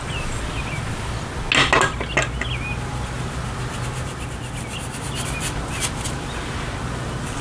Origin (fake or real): real